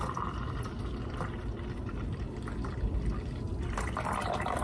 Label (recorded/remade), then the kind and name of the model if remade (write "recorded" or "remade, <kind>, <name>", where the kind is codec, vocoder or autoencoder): remade, vocoder, BigVGAN v2